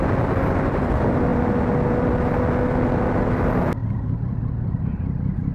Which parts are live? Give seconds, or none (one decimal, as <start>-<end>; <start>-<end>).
0.0-5.5